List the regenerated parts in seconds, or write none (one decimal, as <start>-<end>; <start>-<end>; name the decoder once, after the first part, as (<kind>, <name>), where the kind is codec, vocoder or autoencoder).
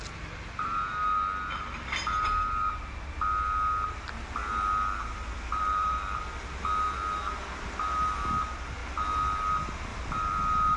4.4-6.2 (vocoder, BigVGAN v2); 9.9-10.8